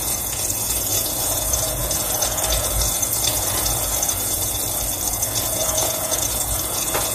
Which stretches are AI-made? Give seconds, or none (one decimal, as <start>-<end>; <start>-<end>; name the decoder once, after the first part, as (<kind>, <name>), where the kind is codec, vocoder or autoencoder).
0.0-4.6 (vocoder, Vocos); 5.1-7.1